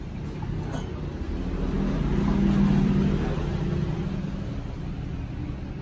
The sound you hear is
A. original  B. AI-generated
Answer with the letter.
A